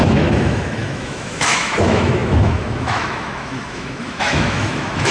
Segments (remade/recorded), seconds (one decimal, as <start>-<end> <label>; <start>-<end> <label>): 0.0-5.1 remade